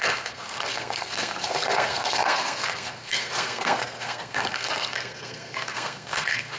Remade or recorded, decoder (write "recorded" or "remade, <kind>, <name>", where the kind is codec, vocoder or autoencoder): remade, codec, SNAC